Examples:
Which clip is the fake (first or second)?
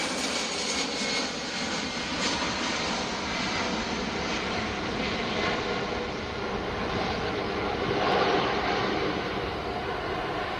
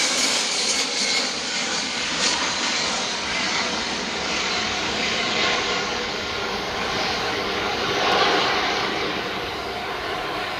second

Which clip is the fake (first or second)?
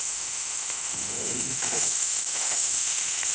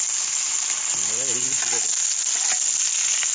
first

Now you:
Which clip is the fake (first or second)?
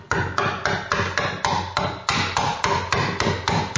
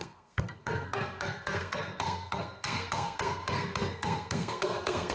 second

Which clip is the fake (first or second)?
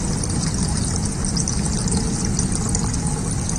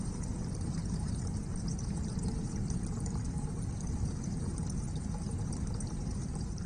second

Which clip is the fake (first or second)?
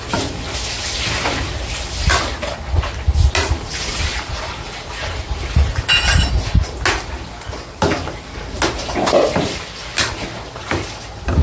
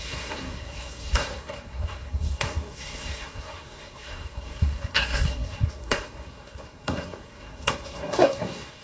second